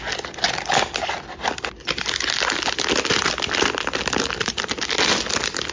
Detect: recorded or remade recorded